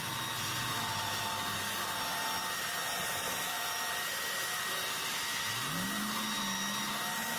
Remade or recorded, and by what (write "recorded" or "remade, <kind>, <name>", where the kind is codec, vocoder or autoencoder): recorded